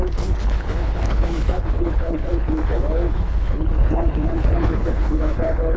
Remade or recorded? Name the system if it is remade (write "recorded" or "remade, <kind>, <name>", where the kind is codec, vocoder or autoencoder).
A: remade, codec, HILCodec